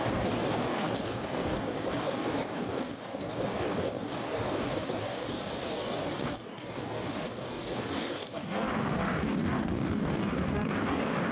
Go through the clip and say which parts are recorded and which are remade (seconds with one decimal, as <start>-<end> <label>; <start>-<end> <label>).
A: 0.0-11.3 remade